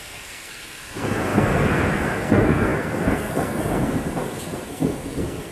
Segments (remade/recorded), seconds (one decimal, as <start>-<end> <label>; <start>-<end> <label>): 0.0-5.5 remade